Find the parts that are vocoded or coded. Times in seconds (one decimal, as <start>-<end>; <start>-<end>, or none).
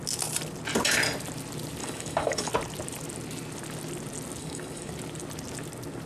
1.8-2.5; 4.4-4.9